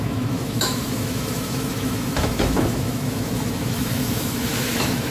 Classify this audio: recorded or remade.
remade